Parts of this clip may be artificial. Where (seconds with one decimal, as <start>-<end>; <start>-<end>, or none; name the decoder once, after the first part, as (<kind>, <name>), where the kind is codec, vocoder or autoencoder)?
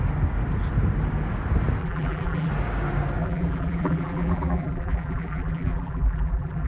1.8-2.5 (vocoder, BigVGAN v2); 3.2-6.7